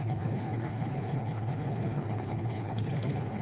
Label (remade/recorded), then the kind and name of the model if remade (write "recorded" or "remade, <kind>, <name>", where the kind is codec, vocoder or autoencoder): remade, codec, HILCodec